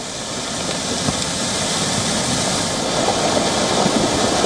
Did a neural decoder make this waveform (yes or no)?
no